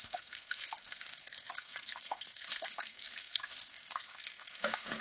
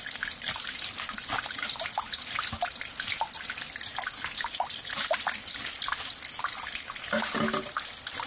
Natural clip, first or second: second